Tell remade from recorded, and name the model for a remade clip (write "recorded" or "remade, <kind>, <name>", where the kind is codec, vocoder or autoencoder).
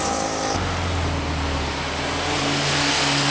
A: recorded